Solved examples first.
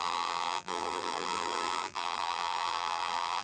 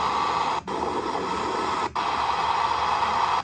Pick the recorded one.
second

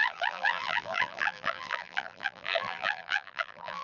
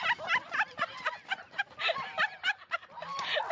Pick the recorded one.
second